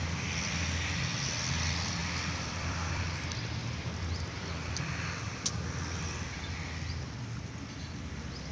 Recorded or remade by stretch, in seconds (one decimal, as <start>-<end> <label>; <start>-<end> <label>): 0.0-2.0 recorded; 2.0-3.0 remade; 3.0-3.6 recorded; 3.6-5.5 remade; 5.5-8.5 recorded